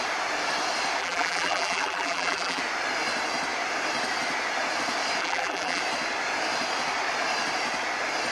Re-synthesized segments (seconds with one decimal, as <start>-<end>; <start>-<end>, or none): 1.0-2.6; 5.2-5.8